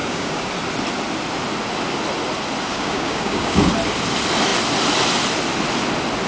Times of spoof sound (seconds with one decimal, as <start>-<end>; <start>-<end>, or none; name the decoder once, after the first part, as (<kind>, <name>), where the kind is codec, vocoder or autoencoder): 0.0-0.5 (codec, DAC); 2.7-3.7